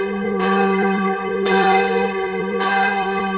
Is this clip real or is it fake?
fake